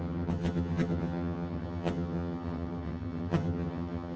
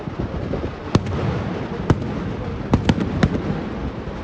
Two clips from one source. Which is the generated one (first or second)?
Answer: first